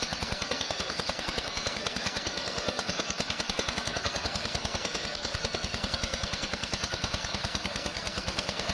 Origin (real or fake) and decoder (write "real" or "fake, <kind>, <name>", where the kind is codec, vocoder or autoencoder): fake, codec, SNAC